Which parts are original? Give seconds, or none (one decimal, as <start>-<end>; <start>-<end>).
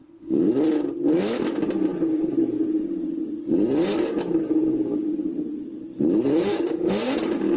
0.5-6.3; 7.1-7.6